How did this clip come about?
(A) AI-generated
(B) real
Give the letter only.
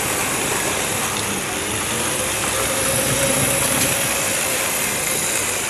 A